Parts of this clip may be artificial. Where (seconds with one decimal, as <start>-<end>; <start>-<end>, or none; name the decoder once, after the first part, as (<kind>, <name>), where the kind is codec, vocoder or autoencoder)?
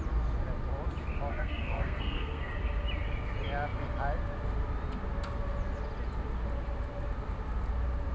1.3-2.5 (codec, SNAC)